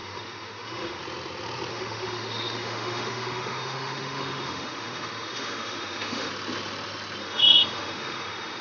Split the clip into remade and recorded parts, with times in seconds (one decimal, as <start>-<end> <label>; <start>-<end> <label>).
0.0-1.0 remade; 1.0-1.7 recorded; 1.7-6.3 remade; 6.3-7.2 recorded; 7.2-8.6 remade